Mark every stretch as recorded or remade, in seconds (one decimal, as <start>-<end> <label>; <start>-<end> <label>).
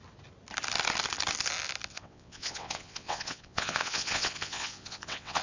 0.0-1.9 recorded; 1.9-5.4 remade